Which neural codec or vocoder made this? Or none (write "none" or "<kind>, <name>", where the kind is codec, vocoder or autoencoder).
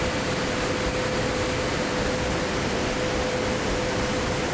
none